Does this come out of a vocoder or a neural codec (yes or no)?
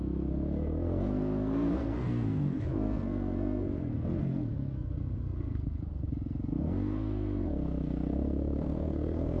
yes